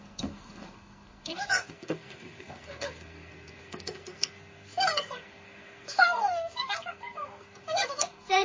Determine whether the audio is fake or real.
fake